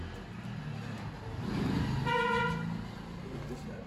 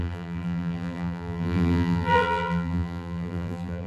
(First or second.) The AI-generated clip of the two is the second